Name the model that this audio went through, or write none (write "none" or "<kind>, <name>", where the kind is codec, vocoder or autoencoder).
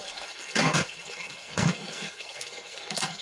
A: codec, SNAC